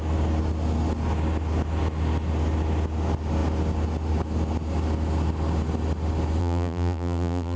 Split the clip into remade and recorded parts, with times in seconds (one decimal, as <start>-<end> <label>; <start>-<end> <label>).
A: 0.0-6.4 recorded; 6.4-7.6 remade